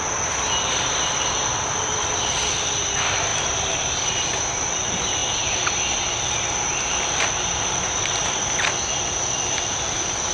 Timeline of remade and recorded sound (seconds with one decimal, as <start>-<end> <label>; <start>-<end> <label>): 0.0-1.4 recorded; 1.4-2.0 remade; 2.0-3.3 recorded; 3.3-4.7 remade; 4.7-10.3 recorded